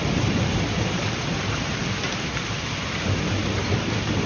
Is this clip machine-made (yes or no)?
no